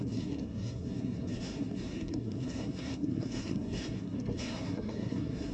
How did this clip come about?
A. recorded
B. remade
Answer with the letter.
B